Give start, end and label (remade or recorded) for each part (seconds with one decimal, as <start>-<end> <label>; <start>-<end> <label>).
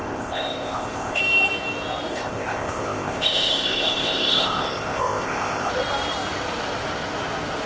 0.0-1.2 remade; 1.2-2.1 recorded; 2.1-5.7 remade; 5.7-7.7 recorded